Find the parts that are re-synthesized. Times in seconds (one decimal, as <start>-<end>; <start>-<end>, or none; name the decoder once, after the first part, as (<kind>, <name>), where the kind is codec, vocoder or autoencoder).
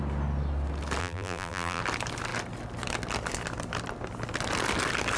1.0-1.8 (vocoder, BigVGAN v2)